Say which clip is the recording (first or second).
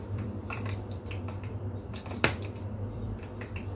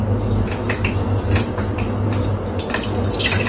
second